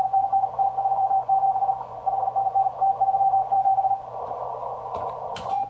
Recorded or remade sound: remade